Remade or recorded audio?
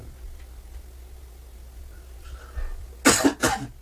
recorded